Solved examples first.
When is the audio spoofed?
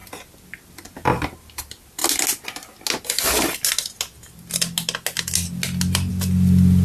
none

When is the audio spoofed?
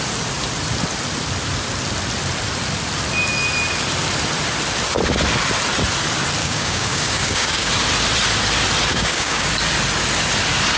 6.4-7.7 (codec, DAC); 8.9-9.5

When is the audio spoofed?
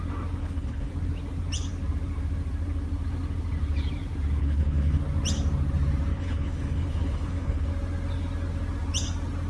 0.4-0.9 (codec, HILCodec); 4.4-5.0; 6.1-7.7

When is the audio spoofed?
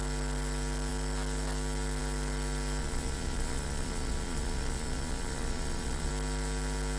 2.8-6.1 (vocoder, Vocos)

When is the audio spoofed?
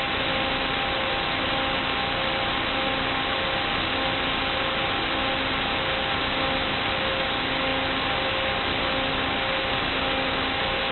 none